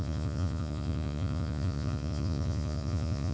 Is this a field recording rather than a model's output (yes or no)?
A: no